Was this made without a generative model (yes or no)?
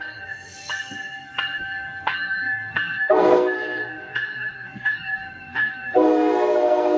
no